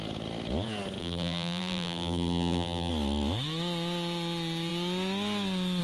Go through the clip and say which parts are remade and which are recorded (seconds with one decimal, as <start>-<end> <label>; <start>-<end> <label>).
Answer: 0.0-1.0 recorded; 1.0-2.9 remade; 2.9-5.8 recorded